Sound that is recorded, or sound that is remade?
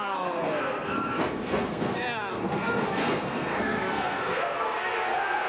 remade